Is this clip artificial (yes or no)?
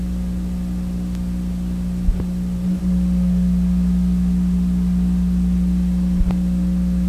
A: no